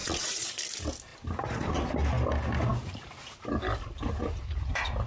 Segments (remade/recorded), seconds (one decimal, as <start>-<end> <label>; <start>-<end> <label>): 0.0-0.6 remade; 0.6-5.1 recorded